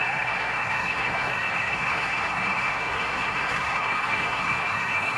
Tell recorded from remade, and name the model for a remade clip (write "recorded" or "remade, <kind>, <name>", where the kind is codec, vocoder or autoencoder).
remade, codec, SNAC